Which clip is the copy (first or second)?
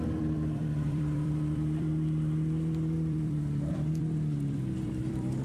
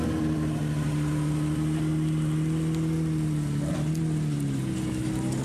first